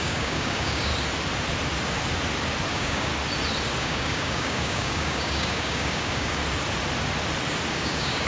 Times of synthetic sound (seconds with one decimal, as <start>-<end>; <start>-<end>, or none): 0.0-0.9; 2.7-3.1; 3.8-6.4; 7.7-8.3